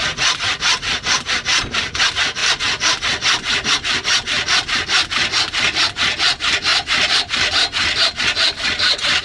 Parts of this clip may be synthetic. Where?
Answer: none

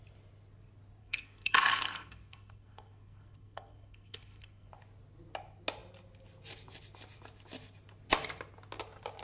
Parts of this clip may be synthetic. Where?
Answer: 1.0-4.7 (codec, SNAC)

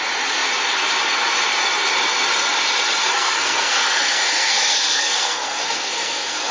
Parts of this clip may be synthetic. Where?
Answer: 3.0-6.5 (codec, SNAC)

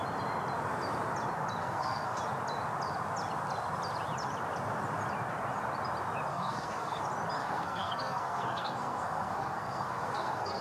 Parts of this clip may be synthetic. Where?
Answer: 1.6-2.2 (codec, SNAC); 6.3-7.0; 7.4-10.6

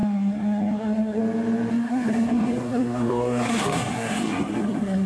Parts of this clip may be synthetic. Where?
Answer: 0.0-1.2 (codec, SNAC); 1.7-5.1

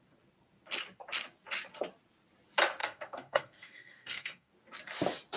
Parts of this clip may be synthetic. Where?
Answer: 2.8-4.5 (codec, SNAC)